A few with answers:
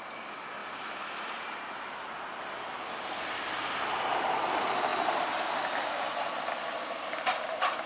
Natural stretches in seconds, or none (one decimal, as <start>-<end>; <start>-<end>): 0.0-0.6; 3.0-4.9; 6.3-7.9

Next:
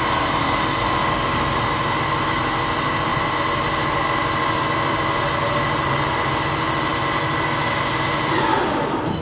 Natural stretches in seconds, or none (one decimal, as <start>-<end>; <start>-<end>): 0.0-3.1; 6.5-9.2

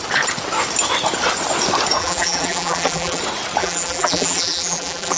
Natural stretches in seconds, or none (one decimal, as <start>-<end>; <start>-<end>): 0.0-2.0; 3.2-3.6

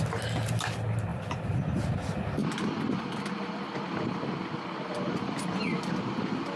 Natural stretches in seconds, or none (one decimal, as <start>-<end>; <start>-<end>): 0.0-1.1; 1.8-6.6

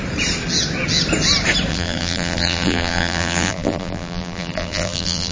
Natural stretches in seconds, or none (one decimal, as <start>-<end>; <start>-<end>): 0.0-1.7

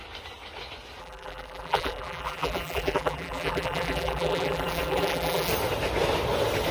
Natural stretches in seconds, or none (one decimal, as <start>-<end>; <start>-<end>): 0.0-1.0; 5.5-6.7